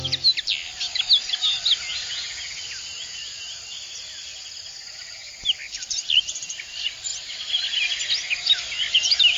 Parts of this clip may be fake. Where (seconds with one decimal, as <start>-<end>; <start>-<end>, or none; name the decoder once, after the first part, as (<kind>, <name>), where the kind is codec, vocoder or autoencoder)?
7.1-7.6 (vocoder, BigVGAN v2)